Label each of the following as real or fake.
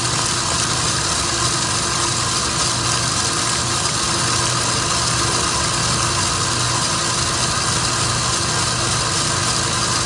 real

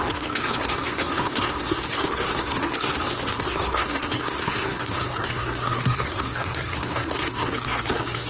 fake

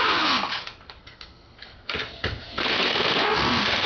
fake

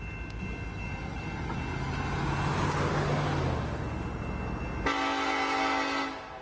real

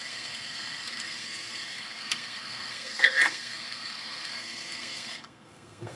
fake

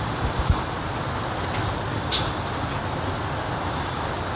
real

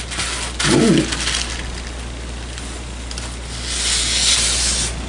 real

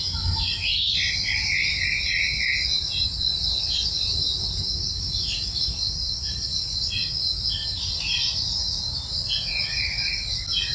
real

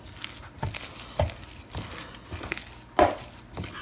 real